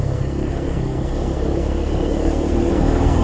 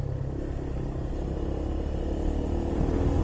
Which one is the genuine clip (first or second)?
second